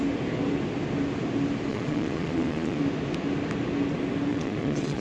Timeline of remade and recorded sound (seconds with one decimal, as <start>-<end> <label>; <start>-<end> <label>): 0.0-1.7 recorded; 1.7-2.8 remade; 2.8-4.3 recorded; 4.3-5.0 remade